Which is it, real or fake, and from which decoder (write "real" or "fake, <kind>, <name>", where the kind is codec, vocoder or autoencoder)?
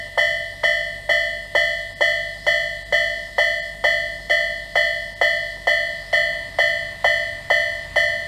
real